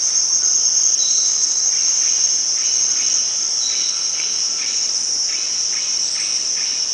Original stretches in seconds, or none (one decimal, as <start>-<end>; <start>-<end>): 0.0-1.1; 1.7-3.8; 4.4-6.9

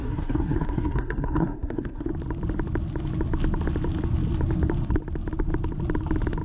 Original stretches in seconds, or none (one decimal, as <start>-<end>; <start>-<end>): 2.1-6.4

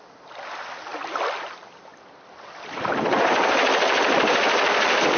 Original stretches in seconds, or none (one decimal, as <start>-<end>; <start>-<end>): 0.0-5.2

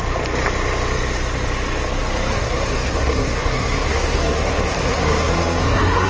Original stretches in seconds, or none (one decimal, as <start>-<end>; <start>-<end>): 0.0-2.3

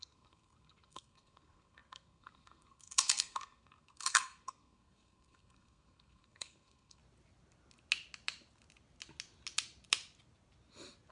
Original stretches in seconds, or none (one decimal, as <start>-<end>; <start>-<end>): 7.0-11.1

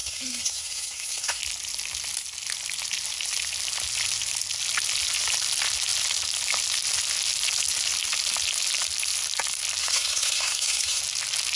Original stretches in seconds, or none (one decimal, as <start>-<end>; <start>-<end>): 1.4-9.8; 11.0-11.6